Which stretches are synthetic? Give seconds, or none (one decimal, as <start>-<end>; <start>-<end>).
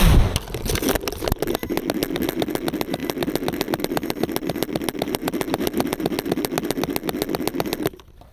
none